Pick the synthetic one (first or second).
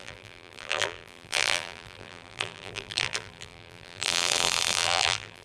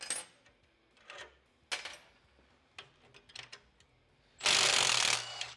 first